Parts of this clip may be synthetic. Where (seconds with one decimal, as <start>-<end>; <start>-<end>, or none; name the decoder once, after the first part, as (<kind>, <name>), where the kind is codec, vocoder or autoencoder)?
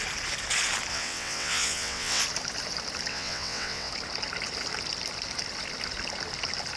0.9-2.2 (vocoder, WaveNeXt); 3.1-3.9